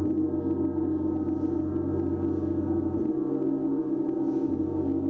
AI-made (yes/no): no